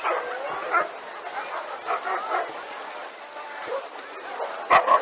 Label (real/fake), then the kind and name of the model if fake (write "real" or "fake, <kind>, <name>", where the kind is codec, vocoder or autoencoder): real